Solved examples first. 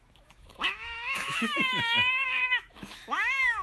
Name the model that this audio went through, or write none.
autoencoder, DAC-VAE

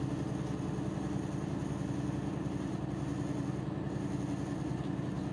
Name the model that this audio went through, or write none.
none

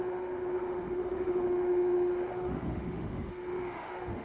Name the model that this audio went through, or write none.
autoencoder, DAC-VAE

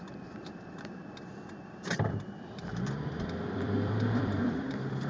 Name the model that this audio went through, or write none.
vocoder, BigVGAN v2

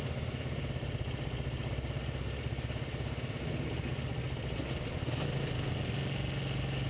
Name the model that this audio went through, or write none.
none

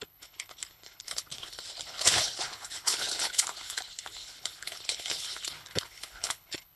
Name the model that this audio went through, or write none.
codec, HILCodec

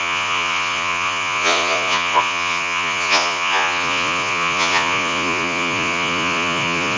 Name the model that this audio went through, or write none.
vocoder, Vocos